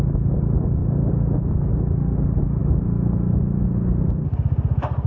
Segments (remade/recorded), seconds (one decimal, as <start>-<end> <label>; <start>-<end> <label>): 0.0-5.1 recorded